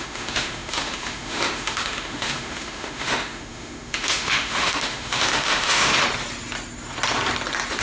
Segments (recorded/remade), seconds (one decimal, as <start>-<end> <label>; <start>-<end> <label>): 0.0-5.9 remade; 5.9-7.8 recorded

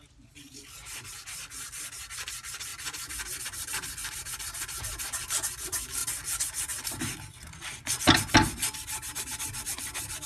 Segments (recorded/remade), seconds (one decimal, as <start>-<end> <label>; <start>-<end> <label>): 0.0-10.3 recorded

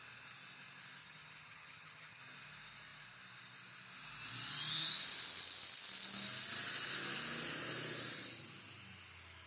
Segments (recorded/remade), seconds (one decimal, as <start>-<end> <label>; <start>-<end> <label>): 0.0-1.0 recorded; 1.0-2.2 remade; 2.2-9.5 recorded

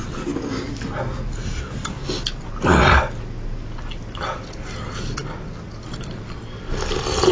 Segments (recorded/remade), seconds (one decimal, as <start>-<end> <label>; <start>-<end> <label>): 0.0-7.3 recorded

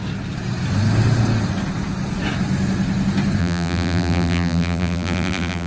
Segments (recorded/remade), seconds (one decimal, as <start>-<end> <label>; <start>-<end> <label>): 0.0-3.4 recorded; 3.4-5.7 remade

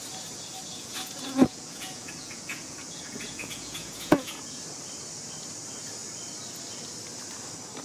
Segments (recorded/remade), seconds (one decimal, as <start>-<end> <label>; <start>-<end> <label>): 0.0-0.7 recorded; 0.7-4.6 remade; 4.6-7.8 recorded